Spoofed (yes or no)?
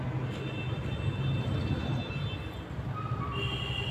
no